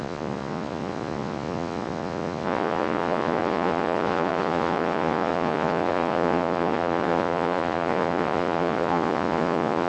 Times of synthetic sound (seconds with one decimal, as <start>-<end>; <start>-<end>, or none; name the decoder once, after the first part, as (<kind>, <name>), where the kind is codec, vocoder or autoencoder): 0.0-9.9 (vocoder, Vocos)

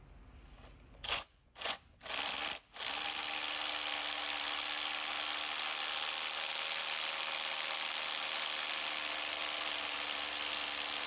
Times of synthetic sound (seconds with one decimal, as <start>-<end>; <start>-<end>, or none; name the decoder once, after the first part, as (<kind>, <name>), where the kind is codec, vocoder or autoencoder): 1.0-1.8 (vocoder, Vocos)

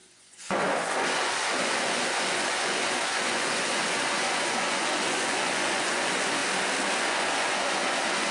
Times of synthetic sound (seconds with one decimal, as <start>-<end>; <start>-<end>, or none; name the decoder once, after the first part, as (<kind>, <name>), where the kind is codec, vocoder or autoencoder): 0.0-6.4 (vocoder, Vocos); 7.0-8.3

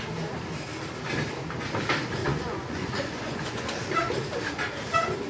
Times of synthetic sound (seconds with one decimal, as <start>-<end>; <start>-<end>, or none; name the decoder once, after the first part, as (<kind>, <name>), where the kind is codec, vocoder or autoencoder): 2.2-3.8 (vocoder, Vocos)

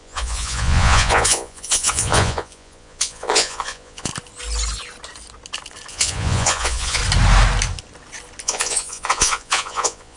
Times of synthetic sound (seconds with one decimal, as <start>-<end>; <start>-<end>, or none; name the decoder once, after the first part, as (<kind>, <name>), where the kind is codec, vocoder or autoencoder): 0.0-4.1 (vocoder, Vocos); 5.9-7.0; 8.4-10.2